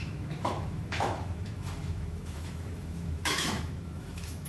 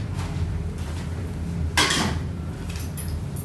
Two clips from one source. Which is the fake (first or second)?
first